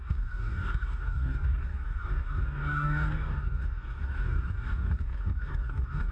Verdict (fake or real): fake